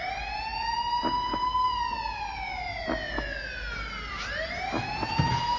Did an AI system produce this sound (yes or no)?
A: no